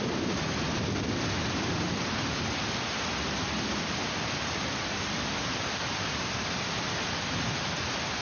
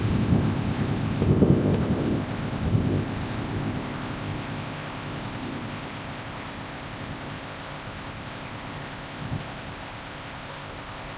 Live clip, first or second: first